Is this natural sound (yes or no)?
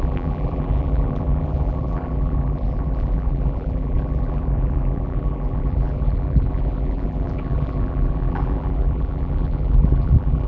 no